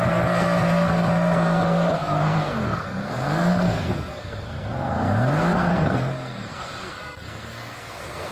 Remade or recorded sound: remade